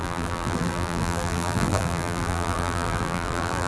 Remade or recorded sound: remade